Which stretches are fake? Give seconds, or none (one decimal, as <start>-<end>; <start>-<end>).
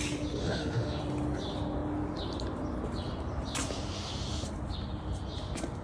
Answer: 0.4-1.0